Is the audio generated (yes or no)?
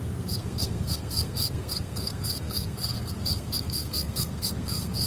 yes